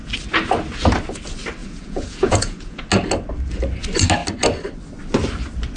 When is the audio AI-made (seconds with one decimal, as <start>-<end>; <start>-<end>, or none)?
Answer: 1.6-2.8